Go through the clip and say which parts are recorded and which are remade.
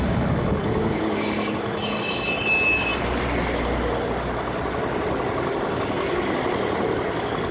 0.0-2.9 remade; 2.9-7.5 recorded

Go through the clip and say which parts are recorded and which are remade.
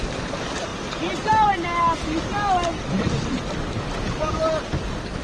0.0-5.2 recorded